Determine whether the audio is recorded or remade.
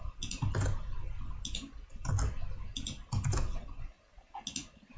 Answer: recorded